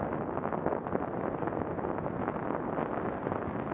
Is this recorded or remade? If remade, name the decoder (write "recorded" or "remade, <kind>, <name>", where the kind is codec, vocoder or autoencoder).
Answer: recorded